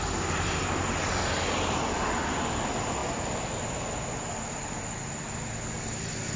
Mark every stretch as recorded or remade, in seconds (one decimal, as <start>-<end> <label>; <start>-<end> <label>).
0.0-6.4 recorded